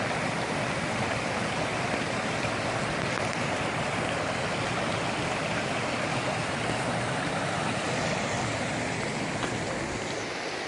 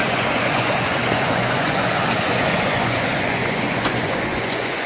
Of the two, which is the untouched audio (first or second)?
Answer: first